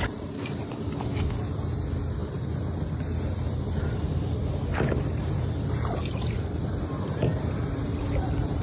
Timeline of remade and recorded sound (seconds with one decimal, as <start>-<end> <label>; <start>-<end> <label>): 0.0-8.6 recorded

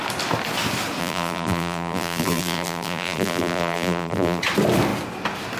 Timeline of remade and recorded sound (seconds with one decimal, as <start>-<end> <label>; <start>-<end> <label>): 0.0-1.0 recorded; 1.0-4.4 remade; 4.4-5.6 recorded

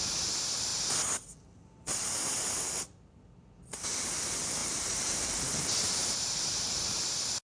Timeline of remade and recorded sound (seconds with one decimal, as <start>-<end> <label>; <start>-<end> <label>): 0.0-4.6 recorded; 4.6-7.0 remade; 7.0-7.6 recorded

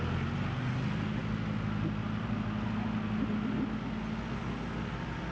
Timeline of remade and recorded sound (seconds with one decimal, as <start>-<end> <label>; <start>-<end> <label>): 0.0-5.3 recorded

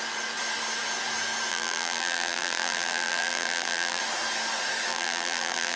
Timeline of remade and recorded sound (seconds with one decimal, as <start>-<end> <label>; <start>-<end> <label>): 0.0-1.5 recorded; 1.5-4.0 remade; 4.0-4.9 recorded; 4.9-5.8 remade

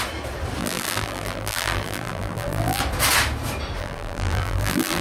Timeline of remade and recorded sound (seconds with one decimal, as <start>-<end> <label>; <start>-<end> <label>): 0.0-0.6 recorded; 0.6-2.8 remade; 2.8-3.8 recorded; 3.8-5.0 remade

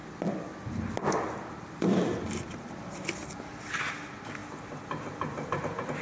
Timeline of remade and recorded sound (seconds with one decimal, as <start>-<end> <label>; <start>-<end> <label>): 0.0-6.0 recorded